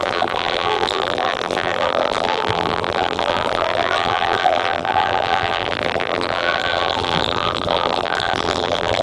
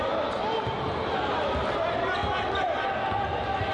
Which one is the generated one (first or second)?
first